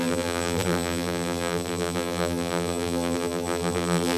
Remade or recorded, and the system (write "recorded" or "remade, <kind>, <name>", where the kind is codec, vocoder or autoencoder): remade, vocoder, BigVGAN v2